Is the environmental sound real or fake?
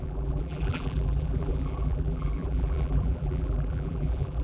fake